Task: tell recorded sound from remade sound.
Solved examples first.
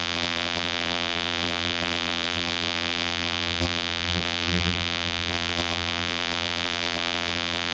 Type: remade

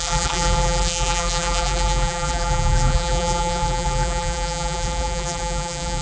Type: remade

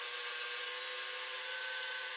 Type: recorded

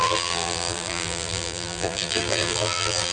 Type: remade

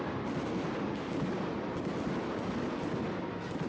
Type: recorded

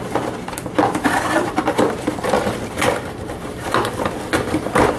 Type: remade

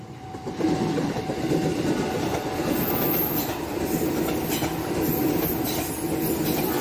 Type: recorded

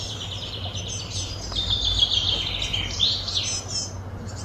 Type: recorded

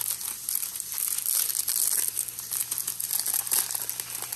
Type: recorded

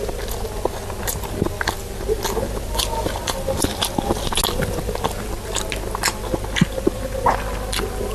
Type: recorded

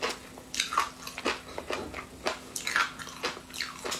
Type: recorded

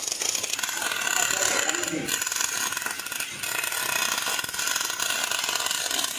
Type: recorded